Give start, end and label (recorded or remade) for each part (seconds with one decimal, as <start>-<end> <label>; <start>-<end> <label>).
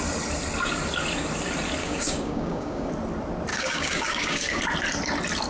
0.0-1.8 recorded; 1.8-2.9 remade; 2.9-3.5 recorded; 3.5-4.6 remade; 4.6-5.5 recorded